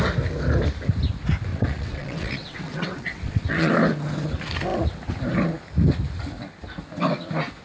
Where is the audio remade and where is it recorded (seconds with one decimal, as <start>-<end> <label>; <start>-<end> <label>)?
0.0-1.5 recorded; 1.5-3.7 remade; 3.7-7.6 recorded